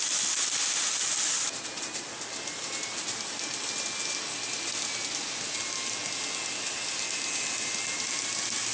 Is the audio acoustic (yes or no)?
yes